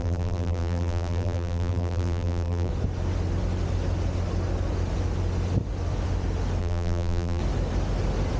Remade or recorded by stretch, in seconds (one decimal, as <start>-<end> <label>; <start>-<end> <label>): 0.0-2.7 remade; 2.7-6.6 recorded; 6.6-7.4 remade; 7.4-8.4 recorded